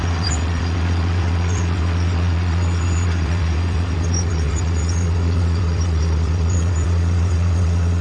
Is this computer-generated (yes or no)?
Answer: yes